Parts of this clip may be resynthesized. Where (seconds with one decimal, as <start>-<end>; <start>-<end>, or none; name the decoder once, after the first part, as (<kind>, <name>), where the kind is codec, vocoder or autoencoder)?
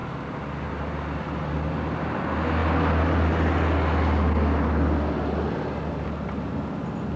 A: none